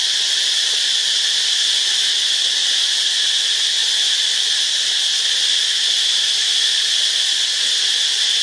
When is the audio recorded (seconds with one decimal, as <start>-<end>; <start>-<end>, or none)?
0.0-8.4